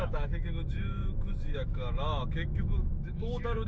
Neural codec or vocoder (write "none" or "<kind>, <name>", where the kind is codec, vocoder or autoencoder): autoencoder, DAC-VAE